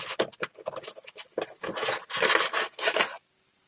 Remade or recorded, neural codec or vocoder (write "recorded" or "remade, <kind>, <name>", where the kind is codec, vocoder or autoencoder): recorded